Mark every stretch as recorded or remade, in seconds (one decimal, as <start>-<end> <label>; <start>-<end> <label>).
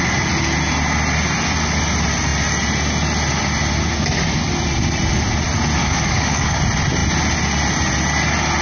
0.0-5.8 recorded; 5.8-6.6 remade; 6.6-8.6 recorded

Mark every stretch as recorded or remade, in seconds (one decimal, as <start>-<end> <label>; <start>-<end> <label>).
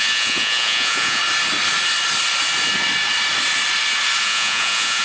0.0-1.2 remade; 1.2-4.2 recorded; 4.2-5.0 remade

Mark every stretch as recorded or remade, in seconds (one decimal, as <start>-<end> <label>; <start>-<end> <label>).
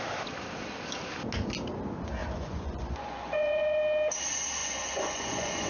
0.0-2.2 recorded; 2.2-3.8 remade; 3.8-4.6 recorded; 4.6-5.7 remade